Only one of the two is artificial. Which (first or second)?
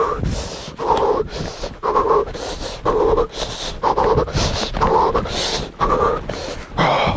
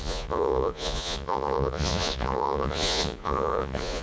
second